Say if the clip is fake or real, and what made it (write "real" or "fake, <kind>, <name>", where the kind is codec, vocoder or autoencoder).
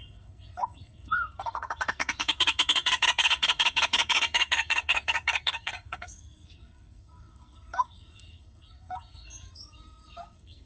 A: fake, codec, SNAC